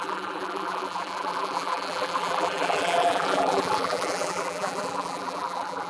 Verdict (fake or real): fake